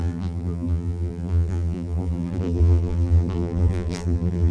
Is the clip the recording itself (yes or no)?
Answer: no